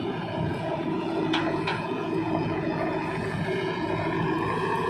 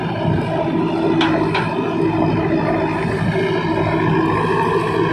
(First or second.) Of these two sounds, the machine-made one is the first